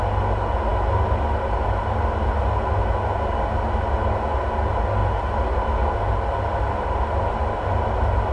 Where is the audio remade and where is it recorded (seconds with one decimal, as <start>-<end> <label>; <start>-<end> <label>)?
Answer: 0.0-8.3 recorded